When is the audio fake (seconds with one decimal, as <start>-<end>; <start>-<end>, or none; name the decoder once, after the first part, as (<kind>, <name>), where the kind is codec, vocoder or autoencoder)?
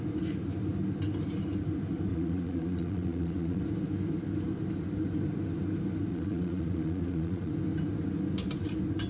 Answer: 2.1-3.6 (vocoder, Vocos); 6.1-7.5